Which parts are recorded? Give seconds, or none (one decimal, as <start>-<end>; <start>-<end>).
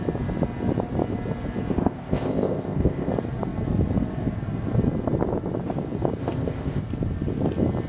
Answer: 0.0-1.7; 3.1-6.2; 6.8-7.9